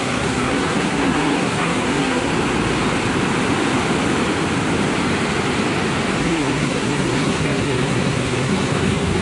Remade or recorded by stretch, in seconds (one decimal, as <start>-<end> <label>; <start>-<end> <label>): 0.0-2.3 remade; 2.3-6.2 recorded; 6.2-9.2 remade

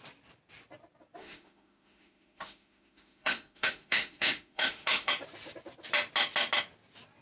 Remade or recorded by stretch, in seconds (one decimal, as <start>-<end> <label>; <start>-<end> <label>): 0.0-1.2 recorded; 1.2-5.1 remade; 5.1-7.2 recorded

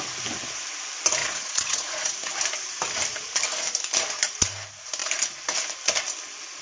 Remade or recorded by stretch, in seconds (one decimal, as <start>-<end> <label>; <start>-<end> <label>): 0.0-1.2 recorded; 1.2-2.3 remade; 2.3-6.6 recorded

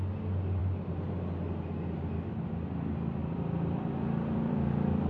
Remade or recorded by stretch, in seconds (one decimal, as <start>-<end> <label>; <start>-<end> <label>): 0.0-3.2 recorded; 3.2-5.1 remade

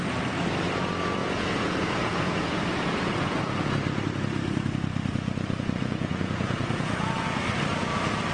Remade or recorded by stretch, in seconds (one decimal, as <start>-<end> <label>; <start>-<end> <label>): 0.0-1.2 recorded; 1.2-3.7 remade; 3.7-5.1 recorded; 5.1-7.4 remade; 7.4-8.3 recorded

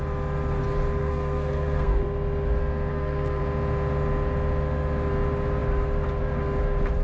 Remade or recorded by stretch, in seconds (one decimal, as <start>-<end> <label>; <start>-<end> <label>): 0.0-1.0 recorded; 1.0-2.0 remade; 2.0-2.9 recorded; 2.9-3.4 remade; 3.4-7.0 recorded

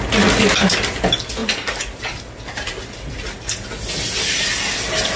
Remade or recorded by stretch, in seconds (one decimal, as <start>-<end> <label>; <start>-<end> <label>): 0.0-1.4 recorded; 1.4-2.2 remade; 2.2-5.2 recorded